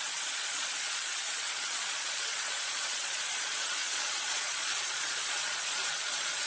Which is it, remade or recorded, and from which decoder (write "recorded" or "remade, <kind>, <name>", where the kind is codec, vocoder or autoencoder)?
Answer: remade, vocoder, Vocos